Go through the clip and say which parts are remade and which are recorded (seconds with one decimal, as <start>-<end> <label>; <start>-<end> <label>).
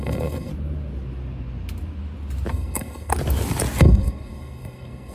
0.0-0.5 remade; 0.5-2.5 recorded; 2.5-3.1 remade; 3.1-3.8 recorded; 3.8-5.1 remade